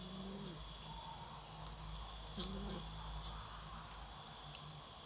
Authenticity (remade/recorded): recorded